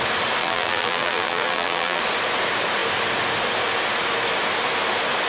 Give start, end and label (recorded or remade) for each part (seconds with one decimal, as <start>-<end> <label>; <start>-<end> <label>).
0.0-0.4 recorded; 0.4-2.0 remade; 2.0-5.3 recorded